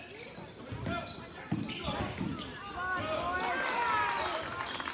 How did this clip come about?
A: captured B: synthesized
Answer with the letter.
A